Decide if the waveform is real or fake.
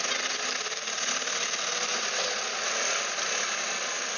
real